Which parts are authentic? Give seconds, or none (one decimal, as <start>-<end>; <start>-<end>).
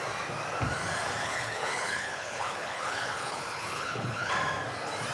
0.0-1.2; 4.3-5.1